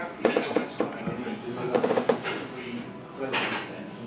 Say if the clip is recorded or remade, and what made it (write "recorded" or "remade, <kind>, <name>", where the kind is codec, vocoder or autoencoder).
remade, vocoder, Vocos